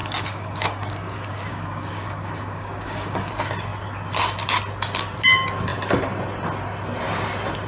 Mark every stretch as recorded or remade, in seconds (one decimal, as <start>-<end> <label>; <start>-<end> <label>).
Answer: 0.0-3.3 remade; 3.3-7.7 recorded